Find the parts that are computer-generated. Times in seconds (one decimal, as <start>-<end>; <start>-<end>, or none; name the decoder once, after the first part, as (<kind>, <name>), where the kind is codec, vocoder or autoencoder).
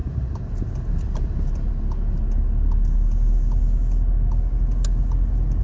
none